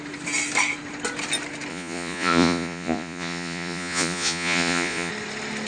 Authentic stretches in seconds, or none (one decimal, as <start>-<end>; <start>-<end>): 0.0-1.7; 5.1-5.7